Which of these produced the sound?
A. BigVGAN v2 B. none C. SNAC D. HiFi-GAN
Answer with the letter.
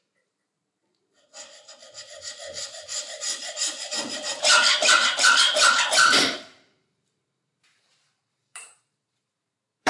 A